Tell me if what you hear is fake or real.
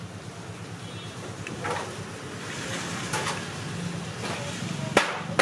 real